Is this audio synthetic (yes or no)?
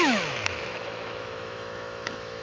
yes